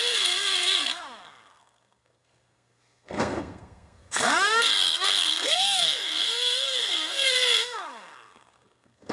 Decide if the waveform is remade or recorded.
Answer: remade